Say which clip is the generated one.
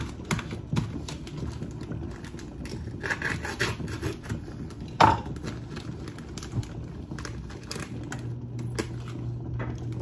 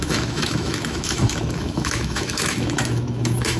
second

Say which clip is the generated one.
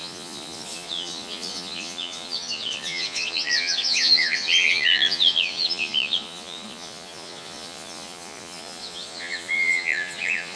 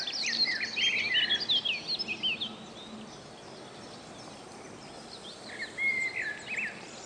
first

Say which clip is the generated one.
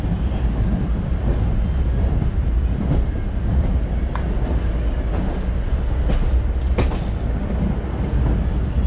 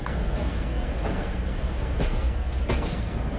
second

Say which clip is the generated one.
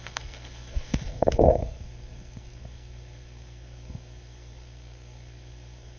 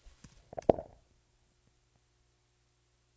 first